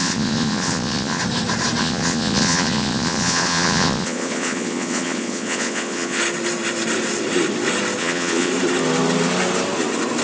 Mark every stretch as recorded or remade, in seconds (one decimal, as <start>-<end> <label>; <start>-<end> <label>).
0.0-1.2 remade; 1.2-1.8 recorded; 1.8-6.2 remade; 6.2-8.0 recorded; 8.0-8.5 remade; 8.5-10.2 recorded